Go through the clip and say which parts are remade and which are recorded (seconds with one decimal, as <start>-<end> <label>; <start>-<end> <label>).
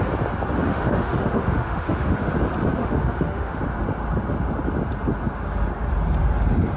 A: 0.0-0.7 recorded; 0.7-2.3 remade; 2.3-2.8 recorded; 2.8-3.6 remade; 3.6-6.8 recorded